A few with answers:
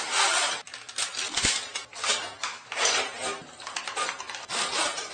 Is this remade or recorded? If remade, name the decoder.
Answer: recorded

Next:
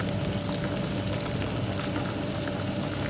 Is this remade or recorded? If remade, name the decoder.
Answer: recorded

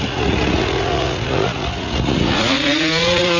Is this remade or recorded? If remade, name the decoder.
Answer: remade, vocoder, Vocos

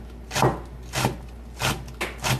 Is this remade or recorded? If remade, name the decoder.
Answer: recorded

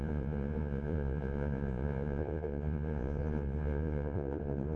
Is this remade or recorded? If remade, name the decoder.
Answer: remade, vocoder, Vocos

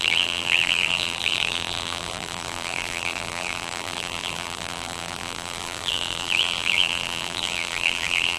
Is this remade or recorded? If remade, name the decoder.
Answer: remade, vocoder, BigVGAN v2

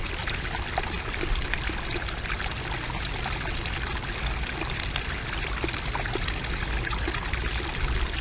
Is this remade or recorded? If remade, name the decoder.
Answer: recorded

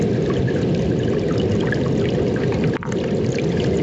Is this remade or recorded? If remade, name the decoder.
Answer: recorded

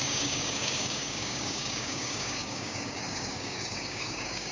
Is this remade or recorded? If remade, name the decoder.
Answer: remade, codec, DAC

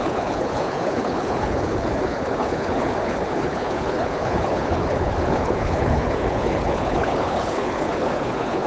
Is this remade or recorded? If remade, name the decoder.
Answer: remade, codec, HILCodec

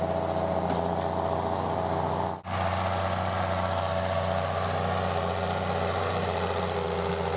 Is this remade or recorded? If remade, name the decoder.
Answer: recorded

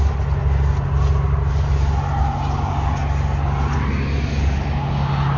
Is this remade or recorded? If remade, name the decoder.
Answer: recorded